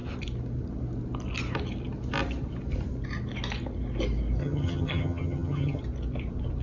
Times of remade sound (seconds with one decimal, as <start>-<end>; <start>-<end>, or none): 4.4-5.8